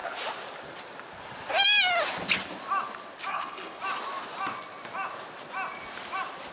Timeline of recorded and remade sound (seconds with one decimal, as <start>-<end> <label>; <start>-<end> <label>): 0.0-3.3 recorded; 3.3-3.8 remade; 3.8-6.5 recorded